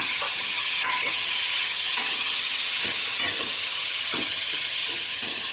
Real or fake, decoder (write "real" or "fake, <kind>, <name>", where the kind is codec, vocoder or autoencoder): fake, vocoder, HiFi-GAN